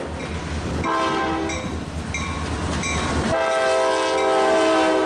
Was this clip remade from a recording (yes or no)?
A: no